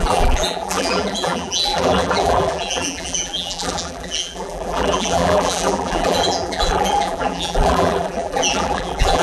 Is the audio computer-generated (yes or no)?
yes